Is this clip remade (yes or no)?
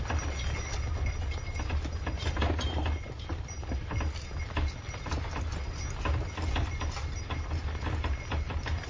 no